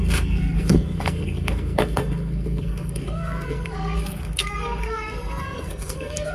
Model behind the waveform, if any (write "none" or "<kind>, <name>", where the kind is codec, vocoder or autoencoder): codec, SNAC